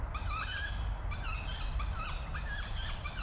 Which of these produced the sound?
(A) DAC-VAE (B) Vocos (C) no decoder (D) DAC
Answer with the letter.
C